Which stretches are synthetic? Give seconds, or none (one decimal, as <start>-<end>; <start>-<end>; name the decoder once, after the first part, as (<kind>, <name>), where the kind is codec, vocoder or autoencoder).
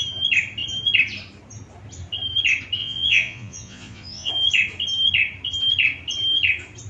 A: 2.8-4.3 (vocoder, Vocos)